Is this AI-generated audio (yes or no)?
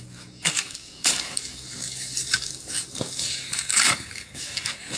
yes